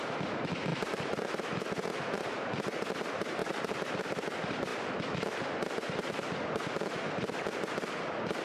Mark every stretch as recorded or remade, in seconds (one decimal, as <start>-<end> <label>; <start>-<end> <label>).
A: 0.0-0.7 recorded; 0.7-1.6 remade; 1.6-3.4 recorded; 3.4-4.0 remade; 4.0-8.4 recorded